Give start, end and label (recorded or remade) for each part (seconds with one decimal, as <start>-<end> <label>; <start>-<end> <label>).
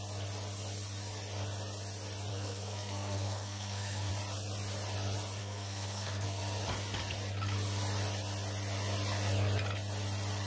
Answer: 0.0-2.3 recorded; 2.3-4.1 remade; 4.1-5.4 recorded; 5.4-6.4 remade; 6.4-10.5 recorded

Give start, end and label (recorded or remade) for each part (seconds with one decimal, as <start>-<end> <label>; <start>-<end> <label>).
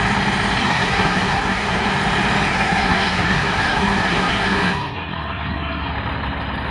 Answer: 0.0-0.6 recorded; 0.6-1.9 remade; 1.9-2.5 recorded; 2.5-5.9 remade; 5.9-6.7 recorded